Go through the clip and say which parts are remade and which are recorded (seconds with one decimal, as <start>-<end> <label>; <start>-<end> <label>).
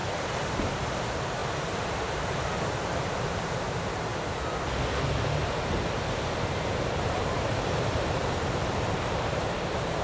0.0-0.5 recorded; 0.5-4.1 remade; 4.1-6.8 recorded; 6.8-10.0 remade